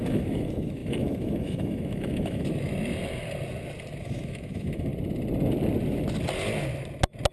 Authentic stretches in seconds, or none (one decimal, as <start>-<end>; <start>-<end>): 2.7-4.0; 4.9-7.3